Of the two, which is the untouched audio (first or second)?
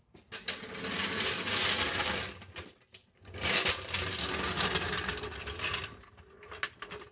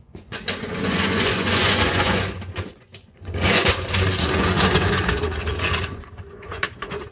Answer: first